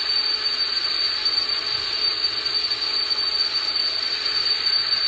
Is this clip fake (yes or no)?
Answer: no